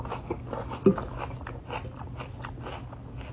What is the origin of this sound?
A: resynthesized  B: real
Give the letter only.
B